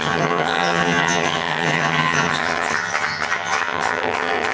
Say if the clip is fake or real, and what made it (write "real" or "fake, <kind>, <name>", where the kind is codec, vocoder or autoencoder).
fake, vocoder, HiFi-GAN